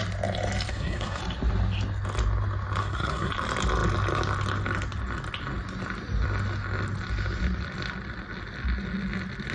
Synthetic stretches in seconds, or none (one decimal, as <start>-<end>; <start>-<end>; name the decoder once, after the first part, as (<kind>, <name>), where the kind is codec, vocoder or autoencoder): 0.7-1.2 (codec, SNAC); 2.8-3.3